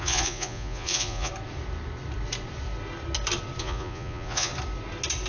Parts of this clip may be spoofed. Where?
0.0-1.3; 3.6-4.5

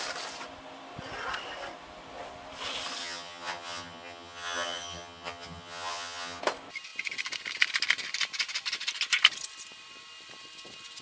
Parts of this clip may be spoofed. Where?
3.0-6.4

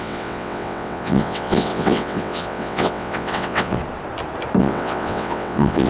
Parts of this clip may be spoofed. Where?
0.0-3.8; 4.6-5.9

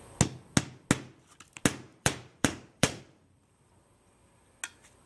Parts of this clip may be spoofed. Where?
1.9-3.0

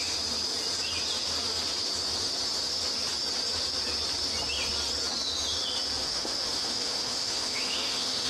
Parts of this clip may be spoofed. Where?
6.0-8.3

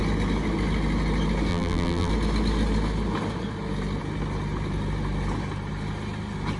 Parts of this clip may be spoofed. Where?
1.5-2.1